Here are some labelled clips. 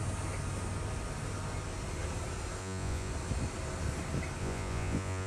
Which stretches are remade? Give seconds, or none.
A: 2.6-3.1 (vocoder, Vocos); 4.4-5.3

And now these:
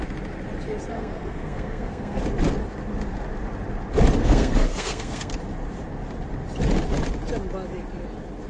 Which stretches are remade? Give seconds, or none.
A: 0.9-2.2 (codec, SNAC); 4.2-5.3

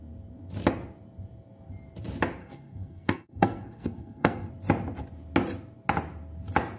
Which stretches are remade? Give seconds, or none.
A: 2.4-4.5 (codec, SNAC)